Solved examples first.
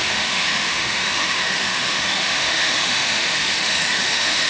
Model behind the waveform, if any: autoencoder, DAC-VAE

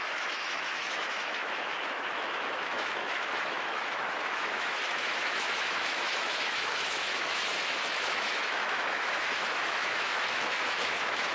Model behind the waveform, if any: autoencoder, DAC-VAE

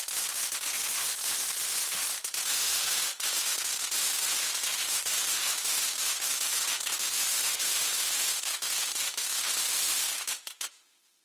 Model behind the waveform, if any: autoencoder, DAC-VAE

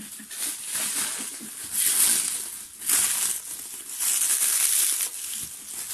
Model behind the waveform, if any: none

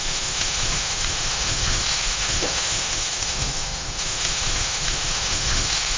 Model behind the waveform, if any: autoencoder, DAC-VAE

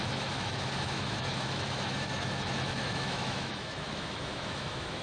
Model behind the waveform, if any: autoencoder, DAC-VAE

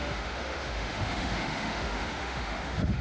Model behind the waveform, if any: autoencoder, DAC-VAE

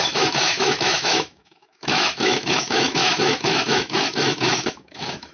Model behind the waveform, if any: autoencoder, DAC-VAE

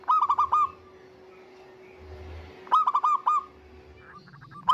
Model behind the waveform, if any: none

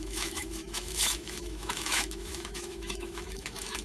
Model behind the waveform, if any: autoencoder, DAC-VAE